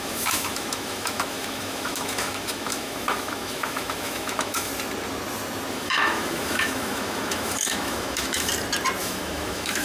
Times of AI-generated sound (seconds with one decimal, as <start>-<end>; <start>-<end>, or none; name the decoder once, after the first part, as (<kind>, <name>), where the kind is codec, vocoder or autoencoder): 0.0-4.7 (autoencoder, DAC-VAE); 5.7-8.5; 9.0-9.8